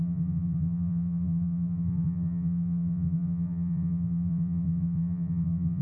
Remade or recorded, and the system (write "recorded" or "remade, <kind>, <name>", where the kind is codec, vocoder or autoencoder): remade, vocoder, BigVGAN v2